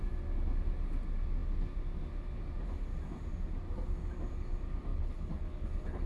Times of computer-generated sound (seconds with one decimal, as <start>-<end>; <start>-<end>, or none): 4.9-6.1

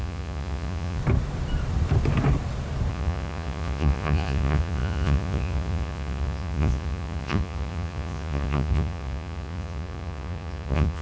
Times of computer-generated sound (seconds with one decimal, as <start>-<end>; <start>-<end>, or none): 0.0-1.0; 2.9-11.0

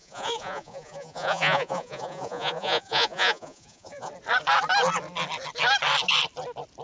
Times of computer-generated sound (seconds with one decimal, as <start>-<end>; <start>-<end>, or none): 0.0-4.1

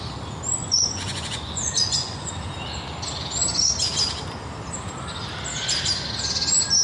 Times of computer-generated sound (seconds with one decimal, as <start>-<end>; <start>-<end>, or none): 0.6-2.3

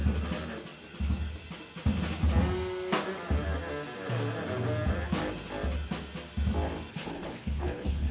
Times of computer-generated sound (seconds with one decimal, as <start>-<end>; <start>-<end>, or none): 6.9-8.1